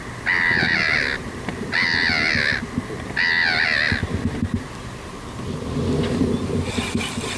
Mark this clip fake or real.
real